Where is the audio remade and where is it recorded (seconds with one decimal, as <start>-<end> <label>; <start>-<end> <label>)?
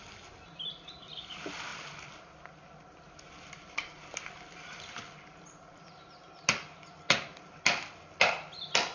0.0-8.9 recorded